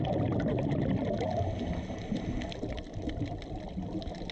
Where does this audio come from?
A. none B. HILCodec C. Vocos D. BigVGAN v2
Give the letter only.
A